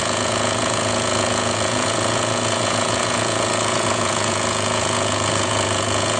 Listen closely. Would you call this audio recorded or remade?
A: remade